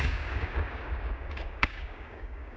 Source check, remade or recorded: remade